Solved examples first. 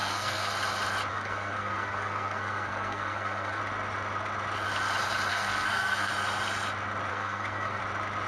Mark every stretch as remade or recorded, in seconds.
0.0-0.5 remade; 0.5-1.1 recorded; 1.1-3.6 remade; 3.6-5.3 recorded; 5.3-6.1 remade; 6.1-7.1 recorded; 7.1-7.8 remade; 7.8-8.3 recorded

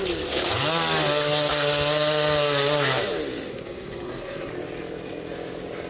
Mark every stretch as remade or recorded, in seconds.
0.0-3.5 recorded; 3.5-4.5 remade; 4.5-5.9 recorded

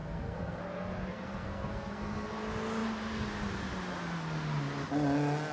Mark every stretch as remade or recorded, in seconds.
0.0-0.6 remade; 0.6-1.1 recorded; 1.1-2.3 remade; 2.3-5.5 recorded